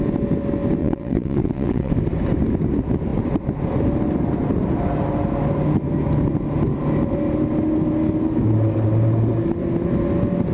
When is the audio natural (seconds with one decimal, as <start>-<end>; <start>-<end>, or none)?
0.0-0.8; 1.9-10.5